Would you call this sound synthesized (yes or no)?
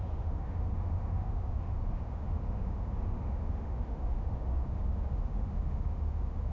yes